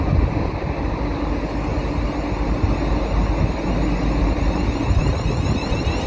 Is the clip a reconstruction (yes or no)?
no